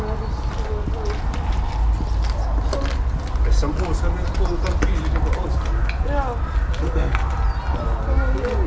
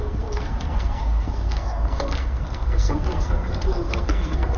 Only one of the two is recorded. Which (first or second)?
first